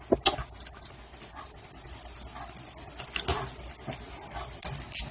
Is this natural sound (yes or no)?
yes